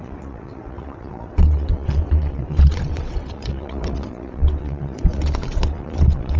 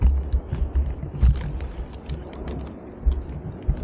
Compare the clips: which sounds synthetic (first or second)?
first